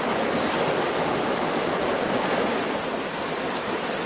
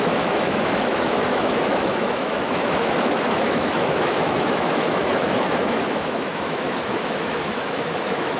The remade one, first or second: second